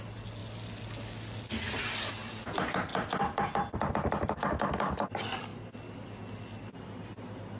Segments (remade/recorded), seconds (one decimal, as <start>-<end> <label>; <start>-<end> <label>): 0.0-7.6 recorded